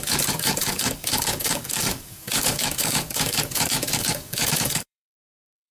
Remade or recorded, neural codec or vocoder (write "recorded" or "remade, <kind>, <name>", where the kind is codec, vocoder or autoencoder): remade, codec, DAC